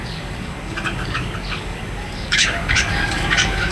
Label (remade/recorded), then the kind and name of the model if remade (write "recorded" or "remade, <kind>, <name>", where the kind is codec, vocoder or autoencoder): remade, codec, DAC